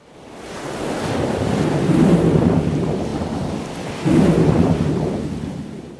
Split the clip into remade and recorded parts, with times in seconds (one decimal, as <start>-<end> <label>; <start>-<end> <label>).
0.0-6.0 recorded